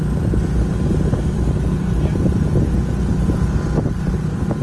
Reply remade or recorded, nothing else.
recorded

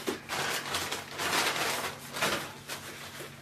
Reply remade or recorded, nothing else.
recorded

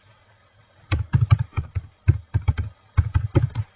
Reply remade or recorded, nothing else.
recorded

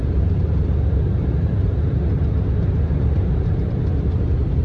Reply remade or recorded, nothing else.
remade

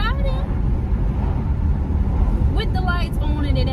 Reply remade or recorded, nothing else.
recorded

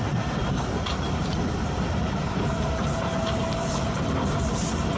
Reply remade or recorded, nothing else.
remade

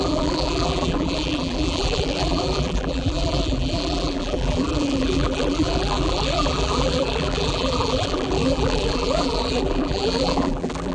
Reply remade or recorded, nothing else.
remade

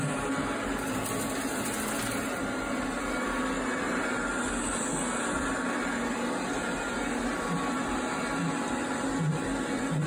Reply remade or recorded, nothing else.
recorded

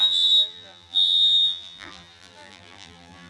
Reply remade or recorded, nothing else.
remade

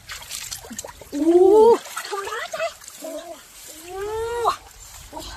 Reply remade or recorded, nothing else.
remade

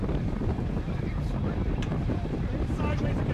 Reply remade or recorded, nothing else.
remade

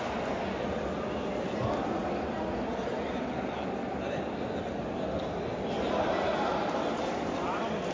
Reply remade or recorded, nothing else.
recorded